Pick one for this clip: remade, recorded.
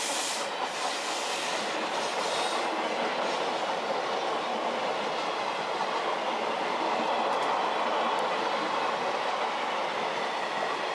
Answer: recorded